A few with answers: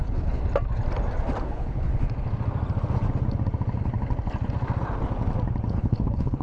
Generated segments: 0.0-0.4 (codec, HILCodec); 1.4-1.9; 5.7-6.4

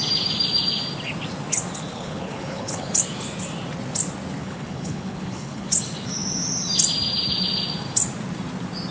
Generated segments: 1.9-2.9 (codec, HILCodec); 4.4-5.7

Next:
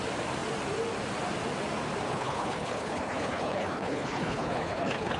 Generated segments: 2.1-5.2 (codec, HILCodec)